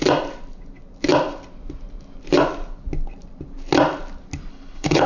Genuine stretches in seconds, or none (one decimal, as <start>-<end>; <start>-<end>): 0.0-4.5